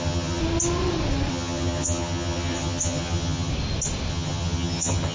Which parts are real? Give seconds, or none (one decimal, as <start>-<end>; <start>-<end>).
0.4-1.3; 3.5-4.1